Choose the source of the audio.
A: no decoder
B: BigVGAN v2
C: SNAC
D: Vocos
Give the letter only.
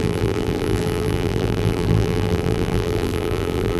B